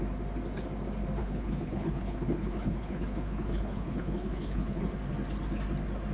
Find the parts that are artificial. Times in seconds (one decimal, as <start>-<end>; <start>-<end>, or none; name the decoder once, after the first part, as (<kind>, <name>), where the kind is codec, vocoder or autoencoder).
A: 1.2-4.8 (codec, HILCodec)